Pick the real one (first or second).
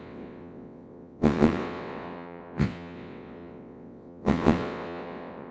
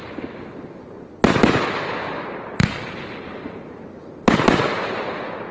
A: second